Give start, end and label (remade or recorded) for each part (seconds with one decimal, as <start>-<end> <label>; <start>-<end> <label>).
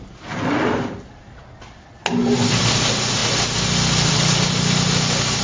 0.0-5.4 recorded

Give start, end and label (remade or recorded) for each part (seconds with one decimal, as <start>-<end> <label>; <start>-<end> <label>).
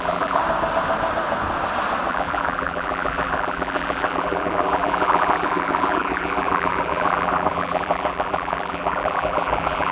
0.0-0.4 remade; 0.4-2.1 recorded; 2.1-9.9 remade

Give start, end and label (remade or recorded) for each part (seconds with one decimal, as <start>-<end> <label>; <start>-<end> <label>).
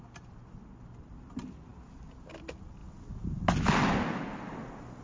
0.0-5.0 recorded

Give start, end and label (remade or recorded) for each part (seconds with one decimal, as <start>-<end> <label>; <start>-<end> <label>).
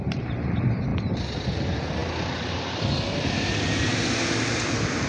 0.0-5.1 recorded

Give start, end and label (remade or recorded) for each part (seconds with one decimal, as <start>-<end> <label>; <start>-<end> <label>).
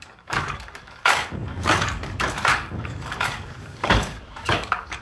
0.0-5.0 remade